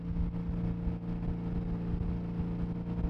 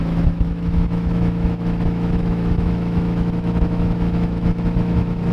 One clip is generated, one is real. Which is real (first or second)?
first